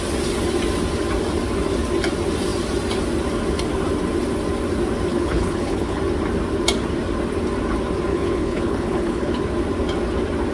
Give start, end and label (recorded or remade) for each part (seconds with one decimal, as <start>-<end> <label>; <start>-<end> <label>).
0.0-5.1 recorded; 5.1-6.0 remade; 6.0-8.1 recorded; 8.1-9.4 remade; 9.4-10.5 recorded